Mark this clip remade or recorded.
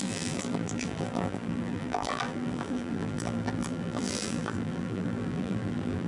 remade